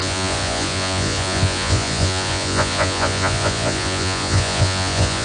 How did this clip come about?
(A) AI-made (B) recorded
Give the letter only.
A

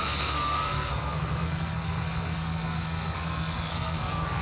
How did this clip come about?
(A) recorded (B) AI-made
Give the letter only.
B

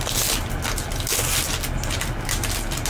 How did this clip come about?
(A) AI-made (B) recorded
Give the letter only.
B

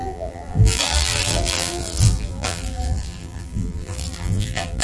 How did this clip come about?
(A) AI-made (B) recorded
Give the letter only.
A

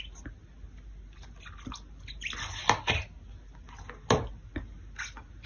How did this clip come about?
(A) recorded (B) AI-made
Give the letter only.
A